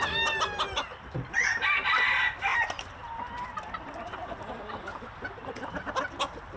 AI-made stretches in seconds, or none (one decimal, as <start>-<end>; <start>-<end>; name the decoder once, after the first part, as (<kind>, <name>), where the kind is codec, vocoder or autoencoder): none